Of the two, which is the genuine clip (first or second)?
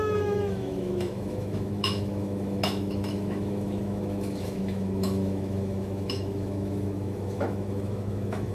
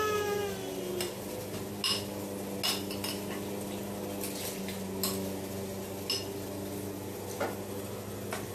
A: second